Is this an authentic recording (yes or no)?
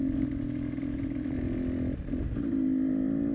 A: yes